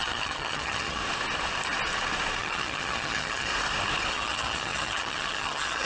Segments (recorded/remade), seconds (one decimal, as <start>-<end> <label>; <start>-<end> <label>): 0.0-1.0 remade; 1.0-2.4 recorded; 2.4-3.5 remade; 3.5-4.1 recorded; 4.1-5.9 remade